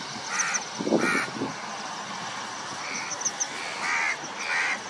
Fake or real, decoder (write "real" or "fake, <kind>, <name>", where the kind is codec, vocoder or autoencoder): real